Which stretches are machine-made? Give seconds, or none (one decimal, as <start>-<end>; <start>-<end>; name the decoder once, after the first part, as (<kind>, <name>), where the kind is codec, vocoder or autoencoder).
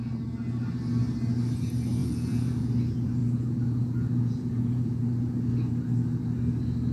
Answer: 2.0-2.7 (vocoder, Vocos); 3.2-5.0